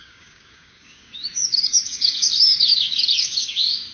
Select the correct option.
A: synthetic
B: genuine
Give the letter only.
A